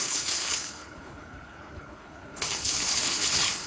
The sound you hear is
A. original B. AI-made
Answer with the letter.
B